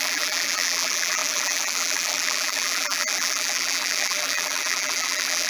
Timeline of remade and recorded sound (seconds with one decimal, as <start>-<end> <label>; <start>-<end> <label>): 0.0-5.5 remade